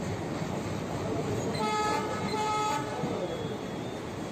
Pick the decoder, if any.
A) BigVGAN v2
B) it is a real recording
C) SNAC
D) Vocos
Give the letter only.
A